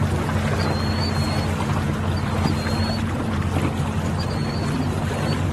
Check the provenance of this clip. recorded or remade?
recorded